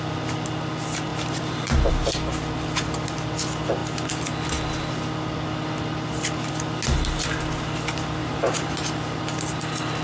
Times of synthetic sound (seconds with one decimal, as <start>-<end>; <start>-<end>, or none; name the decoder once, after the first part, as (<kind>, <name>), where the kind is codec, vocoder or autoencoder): 1.1-1.9 (vocoder, BigVGAN v2); 8.2-9.2